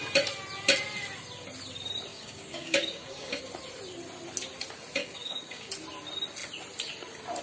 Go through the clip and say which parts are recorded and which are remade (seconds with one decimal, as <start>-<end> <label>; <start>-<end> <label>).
0.0-2.1 recorded; 2.1-3.4 remade; 3.4-5.0 recorded; 5.0-5.7 remade; 5.7-7.4 recorded